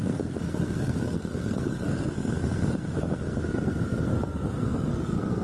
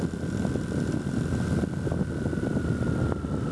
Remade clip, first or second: first